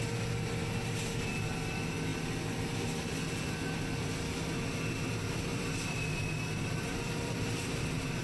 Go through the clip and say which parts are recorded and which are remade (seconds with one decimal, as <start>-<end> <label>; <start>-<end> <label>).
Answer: 0.0-5.5 recorded; 5.5-7.6 remade; 7.6-8.2 recorded